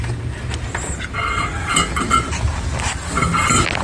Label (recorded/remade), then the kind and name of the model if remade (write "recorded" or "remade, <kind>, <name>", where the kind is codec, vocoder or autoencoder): recorded